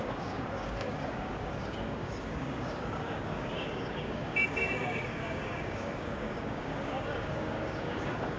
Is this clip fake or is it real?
fake